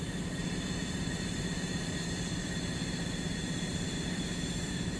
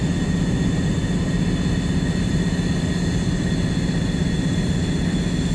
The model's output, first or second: first